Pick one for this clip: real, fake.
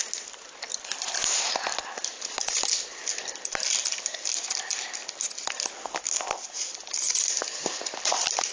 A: real